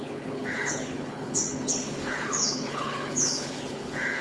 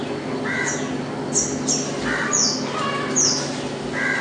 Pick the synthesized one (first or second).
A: first